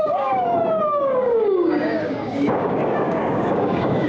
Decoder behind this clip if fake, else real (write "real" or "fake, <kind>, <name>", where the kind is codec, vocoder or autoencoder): fake, codec, DAC